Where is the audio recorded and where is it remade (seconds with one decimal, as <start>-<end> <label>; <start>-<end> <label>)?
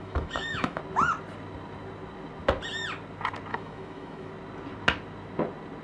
0.0-0.8 remade; 0.8-3.5 recorded; 3.5-4.3 remade; 4.3-5.8 recorded